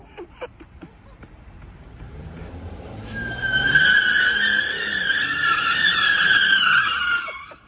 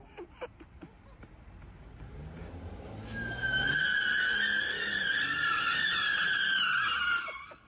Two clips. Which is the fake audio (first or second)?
first